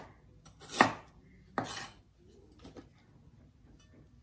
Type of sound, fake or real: real